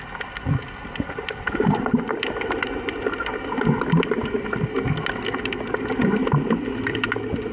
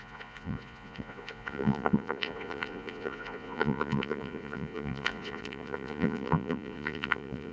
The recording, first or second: first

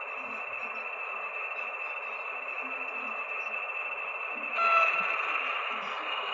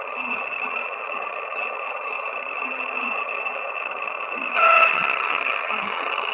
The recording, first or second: first